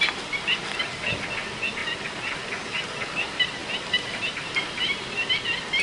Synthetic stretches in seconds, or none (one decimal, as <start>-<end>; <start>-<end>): none